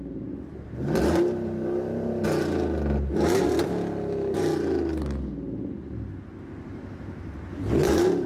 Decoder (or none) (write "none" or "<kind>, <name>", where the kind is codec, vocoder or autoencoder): none